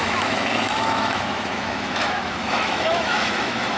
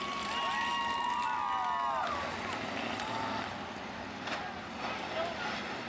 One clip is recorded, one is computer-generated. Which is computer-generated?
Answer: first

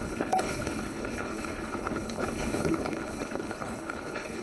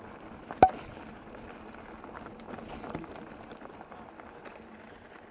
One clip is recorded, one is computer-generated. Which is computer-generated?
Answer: first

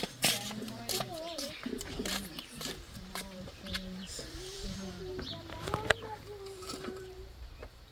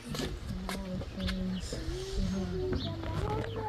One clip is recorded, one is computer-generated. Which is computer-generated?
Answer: first